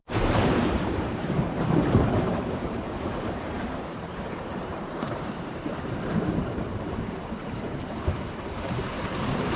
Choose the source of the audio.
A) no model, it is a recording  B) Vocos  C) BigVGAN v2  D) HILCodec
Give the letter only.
C